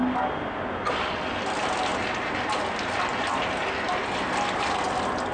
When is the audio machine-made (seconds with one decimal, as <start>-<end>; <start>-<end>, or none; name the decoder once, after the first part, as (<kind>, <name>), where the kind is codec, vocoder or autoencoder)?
none